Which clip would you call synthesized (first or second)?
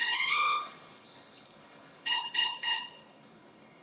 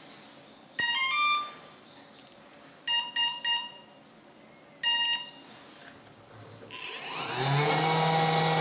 first